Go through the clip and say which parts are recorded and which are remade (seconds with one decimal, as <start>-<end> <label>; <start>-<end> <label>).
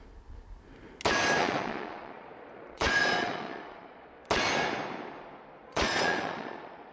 0.0-1.4 recorded; 1.4-4.3 remade; 4.3-5.6 recorded; 5.6-6.9 remade